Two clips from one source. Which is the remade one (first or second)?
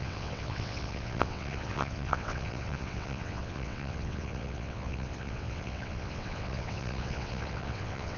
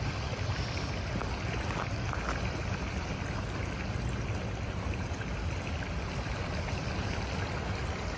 first